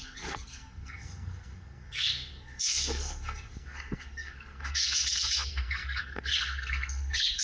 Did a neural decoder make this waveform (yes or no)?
yes